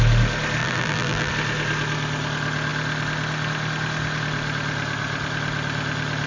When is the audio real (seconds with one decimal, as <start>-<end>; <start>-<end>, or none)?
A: 0.0-0.6; 1.3-6.3